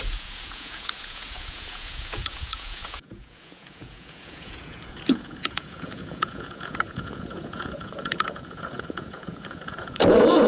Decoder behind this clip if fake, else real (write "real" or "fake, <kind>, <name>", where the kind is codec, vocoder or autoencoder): fake, vocoder, Vocos